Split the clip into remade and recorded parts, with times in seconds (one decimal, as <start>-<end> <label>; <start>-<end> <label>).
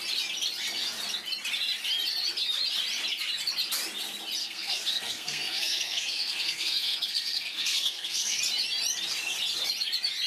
0.0-4.4 recorded; 4.4-8.4 remade; 8.4-10.3 recorded